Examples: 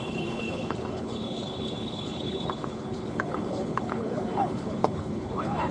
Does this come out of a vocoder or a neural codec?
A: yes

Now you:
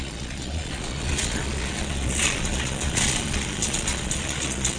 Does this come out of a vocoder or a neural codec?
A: yes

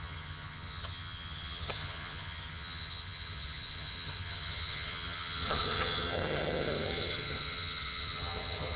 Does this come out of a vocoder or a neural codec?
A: yes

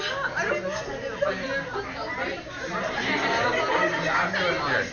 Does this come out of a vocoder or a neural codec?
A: no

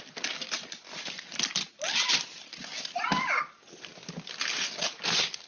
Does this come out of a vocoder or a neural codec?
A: no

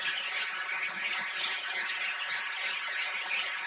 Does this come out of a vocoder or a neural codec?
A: no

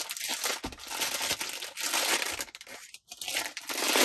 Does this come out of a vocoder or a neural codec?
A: no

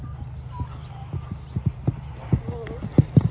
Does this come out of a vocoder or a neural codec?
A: no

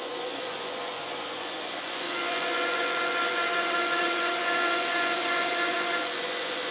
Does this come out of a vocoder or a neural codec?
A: yes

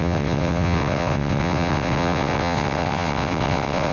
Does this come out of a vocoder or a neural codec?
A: yes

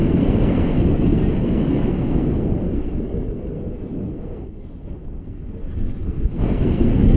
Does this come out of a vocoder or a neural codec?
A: yes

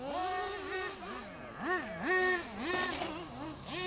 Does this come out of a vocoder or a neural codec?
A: no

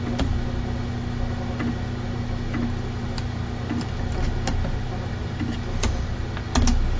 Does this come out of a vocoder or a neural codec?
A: no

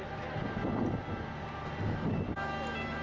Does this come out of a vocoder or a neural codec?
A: no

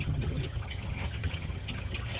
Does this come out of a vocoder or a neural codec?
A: yes